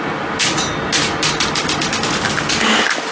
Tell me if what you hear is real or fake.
real